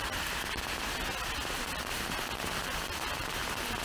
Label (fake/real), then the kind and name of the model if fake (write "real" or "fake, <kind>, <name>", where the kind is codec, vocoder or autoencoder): real